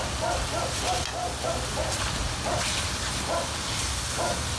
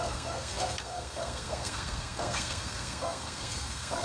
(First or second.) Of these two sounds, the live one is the first